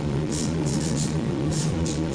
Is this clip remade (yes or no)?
yes